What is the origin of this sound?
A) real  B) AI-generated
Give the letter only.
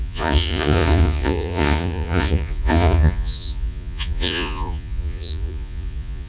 B